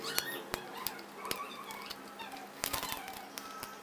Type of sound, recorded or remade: recorded